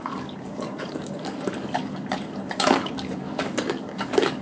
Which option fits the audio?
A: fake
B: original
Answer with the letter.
A